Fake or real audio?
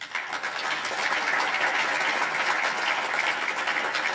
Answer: real